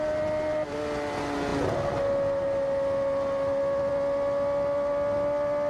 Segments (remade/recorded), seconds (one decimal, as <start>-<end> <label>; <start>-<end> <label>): 0.0-5.7 recorded